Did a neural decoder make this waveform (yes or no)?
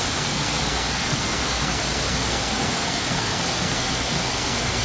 yes